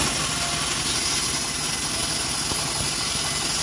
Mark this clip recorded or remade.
recorded